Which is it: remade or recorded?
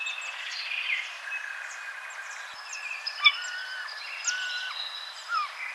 recorded